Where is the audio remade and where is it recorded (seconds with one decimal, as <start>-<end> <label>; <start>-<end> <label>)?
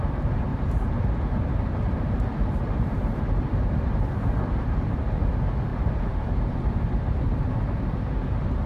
0.0-0.5 recorded; 0.5-5.1 remade; 5.1-5.7 recorded; 5.7-7.5 remade; 7.5-8.7 recorded